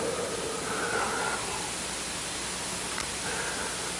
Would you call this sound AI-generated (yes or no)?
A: no